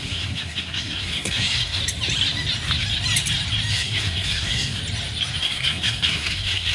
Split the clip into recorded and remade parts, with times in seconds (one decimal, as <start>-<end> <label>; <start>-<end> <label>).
0.0-1.8 remade; 1.8-3.7 recorded; 3.7-4.8 remade; 4.8-5.4 recorded; 5.4-6.7 remade